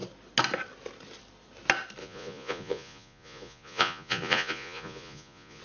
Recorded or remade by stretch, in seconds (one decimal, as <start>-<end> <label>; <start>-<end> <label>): 0.0-2.0 recorded; 2.0-5.6 remade